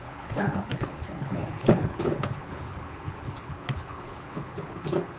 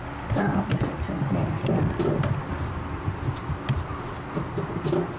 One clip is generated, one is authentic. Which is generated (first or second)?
first